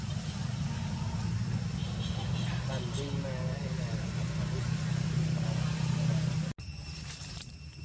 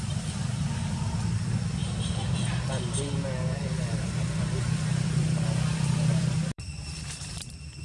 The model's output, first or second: second